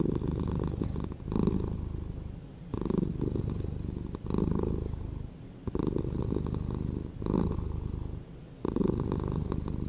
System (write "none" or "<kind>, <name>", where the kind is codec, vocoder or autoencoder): none